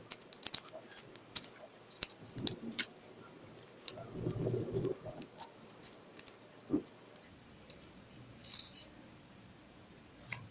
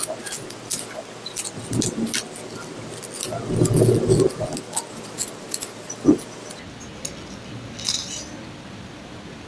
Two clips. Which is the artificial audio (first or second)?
first